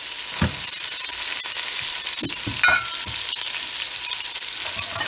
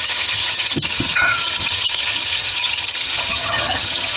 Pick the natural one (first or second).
first